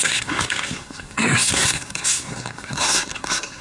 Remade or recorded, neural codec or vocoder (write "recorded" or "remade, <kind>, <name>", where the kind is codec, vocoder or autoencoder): remade, codec, SNAC